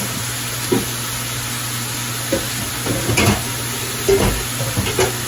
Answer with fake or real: real